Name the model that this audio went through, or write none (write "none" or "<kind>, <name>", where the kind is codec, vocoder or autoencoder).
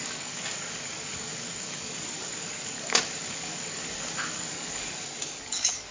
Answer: codec, DAC